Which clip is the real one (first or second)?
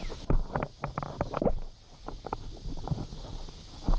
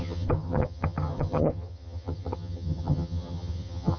first